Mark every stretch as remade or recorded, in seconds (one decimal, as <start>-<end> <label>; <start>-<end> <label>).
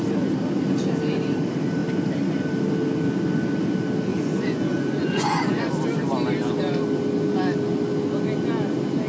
0.0-4.1 recorded; 4.1-5.7 remade; 5.7-9.1 recorded